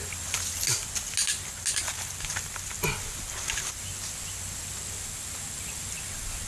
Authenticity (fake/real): real